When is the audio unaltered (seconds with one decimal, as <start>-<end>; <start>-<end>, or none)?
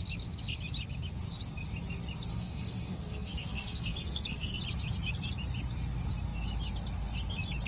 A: 0.0-2.3; 4.6-7.7